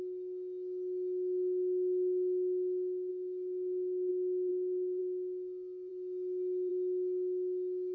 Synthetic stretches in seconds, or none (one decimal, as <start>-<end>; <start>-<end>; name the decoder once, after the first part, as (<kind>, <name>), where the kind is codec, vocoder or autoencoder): 3.1-4.1 (codec, SNAC); 4.5-5.0